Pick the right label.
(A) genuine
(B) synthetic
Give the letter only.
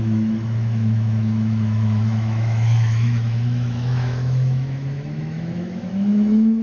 B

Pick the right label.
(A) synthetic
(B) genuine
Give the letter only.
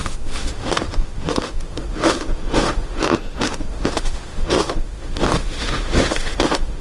A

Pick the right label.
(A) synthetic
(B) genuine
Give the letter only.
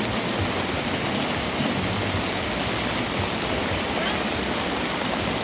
B